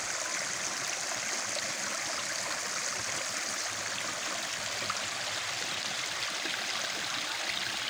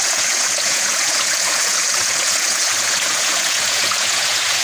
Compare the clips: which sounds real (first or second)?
first